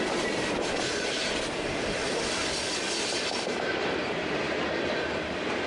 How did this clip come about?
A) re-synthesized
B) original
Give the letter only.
B